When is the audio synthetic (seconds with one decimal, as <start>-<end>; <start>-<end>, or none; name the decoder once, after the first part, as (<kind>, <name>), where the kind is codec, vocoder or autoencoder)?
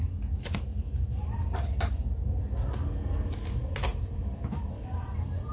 0.7-2.1 (vocoder, BigVGAN v2); 3.9-5.5